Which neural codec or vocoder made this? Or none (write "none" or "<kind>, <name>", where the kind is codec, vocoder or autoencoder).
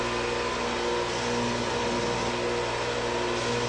none